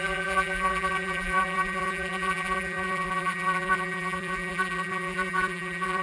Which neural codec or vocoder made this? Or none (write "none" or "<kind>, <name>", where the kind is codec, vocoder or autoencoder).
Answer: vocoder, BigVGAN v2